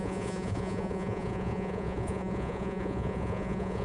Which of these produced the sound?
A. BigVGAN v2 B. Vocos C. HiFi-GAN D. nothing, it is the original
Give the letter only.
B